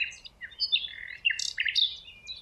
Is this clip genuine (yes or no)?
yes